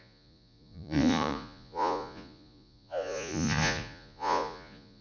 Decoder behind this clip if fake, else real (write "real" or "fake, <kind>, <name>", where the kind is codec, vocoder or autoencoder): fake, vocoder, Vocos